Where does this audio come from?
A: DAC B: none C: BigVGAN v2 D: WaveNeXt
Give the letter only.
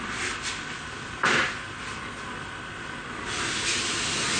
B